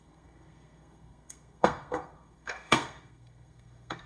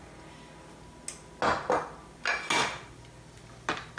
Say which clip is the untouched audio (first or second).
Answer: second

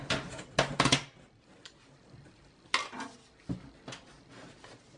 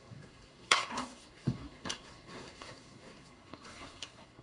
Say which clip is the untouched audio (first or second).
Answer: first